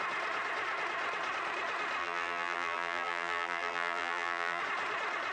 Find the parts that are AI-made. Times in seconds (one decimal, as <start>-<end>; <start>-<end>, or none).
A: 2.0-4.6